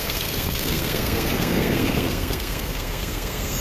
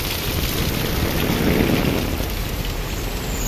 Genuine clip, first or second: second